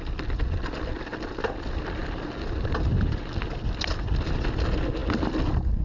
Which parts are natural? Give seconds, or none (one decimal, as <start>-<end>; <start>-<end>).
0.0-5.8

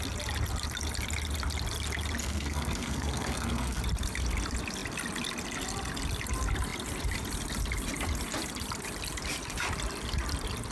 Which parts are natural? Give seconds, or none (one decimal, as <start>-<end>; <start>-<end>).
0.0-2.2; 3.8-10.7

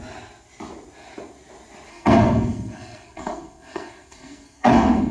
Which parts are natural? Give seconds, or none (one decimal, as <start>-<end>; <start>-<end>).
0.0-1.9

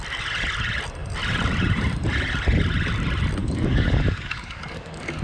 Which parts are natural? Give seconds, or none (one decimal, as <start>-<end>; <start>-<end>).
0.0-3.4

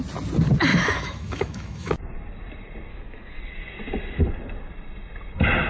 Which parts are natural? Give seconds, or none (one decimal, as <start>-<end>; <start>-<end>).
0.0-0.7; 1.9-2.9; 3.4-5.7

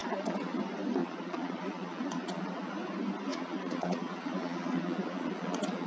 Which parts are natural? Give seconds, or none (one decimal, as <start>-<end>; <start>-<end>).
0.6-1.0; 2.7-3.3

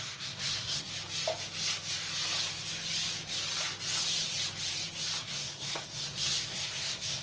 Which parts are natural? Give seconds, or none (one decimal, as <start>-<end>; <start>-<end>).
0.9-5.2